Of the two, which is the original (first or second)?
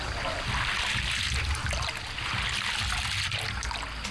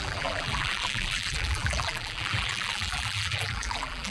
first